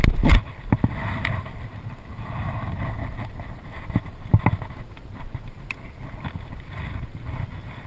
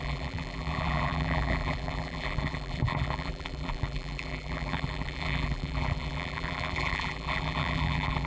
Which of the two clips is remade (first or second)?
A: second